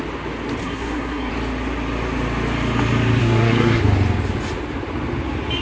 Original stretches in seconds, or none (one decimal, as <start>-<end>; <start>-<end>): 0.0-0.6; 1.3-3.2; 3.8-5.6